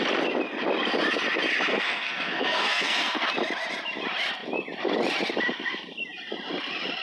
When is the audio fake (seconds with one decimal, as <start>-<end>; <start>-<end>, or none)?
1.7-3.3